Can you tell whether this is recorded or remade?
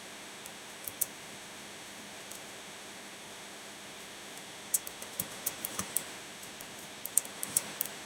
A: remade